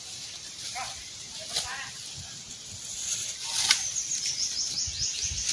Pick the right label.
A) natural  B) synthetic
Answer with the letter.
A